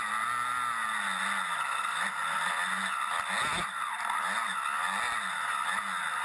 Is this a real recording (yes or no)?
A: yes